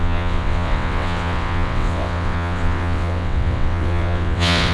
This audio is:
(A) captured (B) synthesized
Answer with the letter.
B